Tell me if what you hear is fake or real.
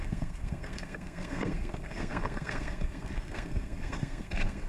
fake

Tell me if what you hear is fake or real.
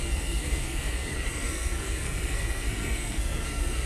fake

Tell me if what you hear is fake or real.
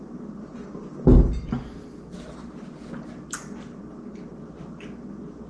real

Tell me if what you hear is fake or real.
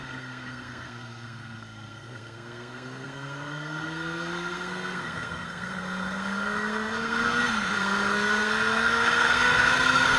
fake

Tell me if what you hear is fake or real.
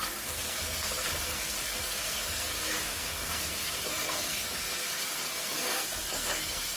fake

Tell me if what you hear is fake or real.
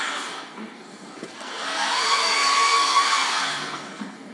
fake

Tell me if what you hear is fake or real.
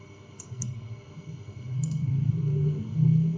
fake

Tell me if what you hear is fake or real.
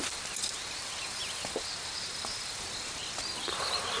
real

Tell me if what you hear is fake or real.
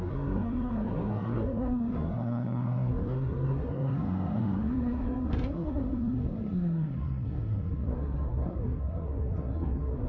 fake